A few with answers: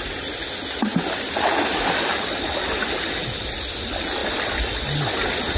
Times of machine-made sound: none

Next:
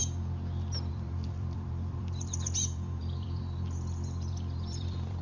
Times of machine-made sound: 0.9-5.2

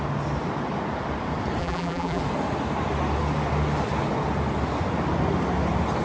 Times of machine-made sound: 1.6-2.2

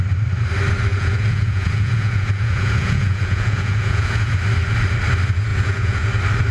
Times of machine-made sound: 0.9-4.3; 5.5-6.1

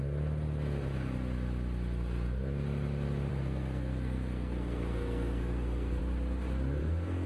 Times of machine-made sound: 3.3-6.0; 6.8-7.3

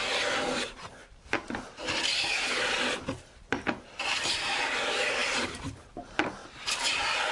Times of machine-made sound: 0.0-0.9; 3.5-6.4

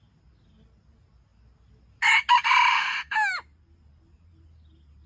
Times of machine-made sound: 2.7-3.3

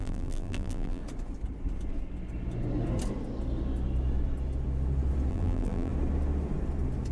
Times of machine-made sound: 0.0-1.0; 5.3-5.9